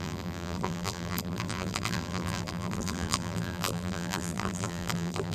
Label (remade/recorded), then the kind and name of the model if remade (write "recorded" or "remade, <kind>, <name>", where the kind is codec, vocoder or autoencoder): remade, vocoder, BigVGAN v2